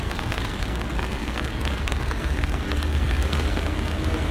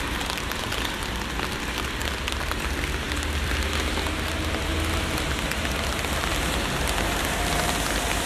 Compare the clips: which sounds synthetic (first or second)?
first